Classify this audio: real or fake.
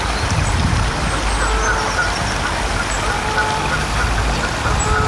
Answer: real